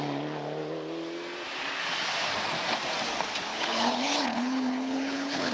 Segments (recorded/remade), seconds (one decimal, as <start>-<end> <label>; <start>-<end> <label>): 0.0-3.5 recorded; 3.5-5.5 remade